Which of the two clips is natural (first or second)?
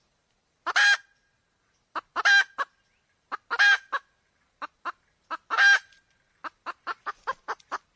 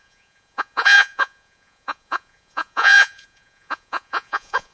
first